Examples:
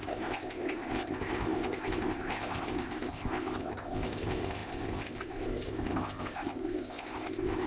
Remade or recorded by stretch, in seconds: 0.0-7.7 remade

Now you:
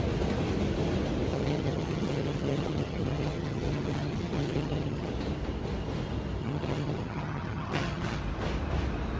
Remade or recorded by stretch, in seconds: 0.0-1.3 recorded; 1.3-5.1 remade; 5.1-6.4 recorded; 6.4-8.2 remade; 8.2-9.2 recorded

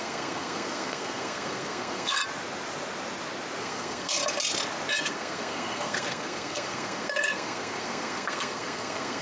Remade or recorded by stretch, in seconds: 0.0-2.2 remade; 2.2-3.6 recorded; 3.6-4.2 remade; 4.2-5.0 recorded; 5.0-9.2 remade

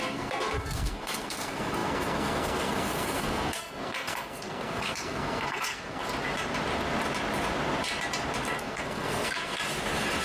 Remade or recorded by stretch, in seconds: 0.0-6.0 remade; 6.0-8.6 recorded; 8.6-9.6 remade; 9.6-10.2 recorded

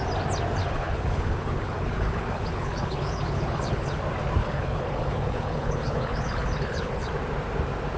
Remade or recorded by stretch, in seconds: 0.0-0.6 recorded; 0.6-4.0 remade; 4.0-4.4 recorded; 4.4-7.1 remade; 7.1-8.0 recorded

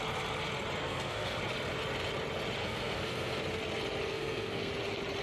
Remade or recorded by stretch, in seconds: 0.0-0.8 recorded; 0.8-1.4 remade; 1.4-2.6 recorded; 2.6-3.4 remade; 3.4-4.1 recorded; 4.1-4.7 remade; 4.7-5.2 recorded